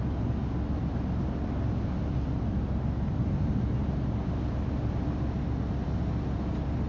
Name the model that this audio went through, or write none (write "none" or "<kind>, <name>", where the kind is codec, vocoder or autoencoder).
none